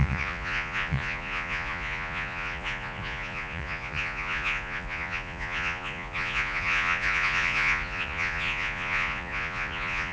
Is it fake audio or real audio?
fake